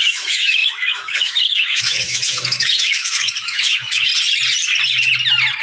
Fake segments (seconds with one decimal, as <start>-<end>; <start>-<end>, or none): 0.0-4.1